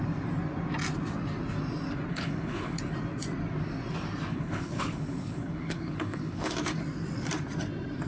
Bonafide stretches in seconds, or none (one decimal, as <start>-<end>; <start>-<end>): 0.0-2.1; 2.8-4.3; 6.5-8.1